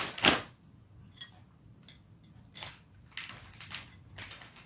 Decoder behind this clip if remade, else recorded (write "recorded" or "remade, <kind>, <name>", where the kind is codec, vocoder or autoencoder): recorded